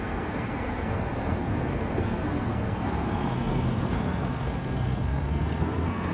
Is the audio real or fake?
fake